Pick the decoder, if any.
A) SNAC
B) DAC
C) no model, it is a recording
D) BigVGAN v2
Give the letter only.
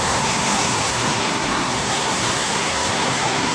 A